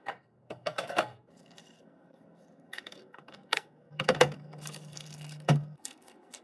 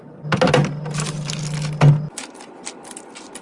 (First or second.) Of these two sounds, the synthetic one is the first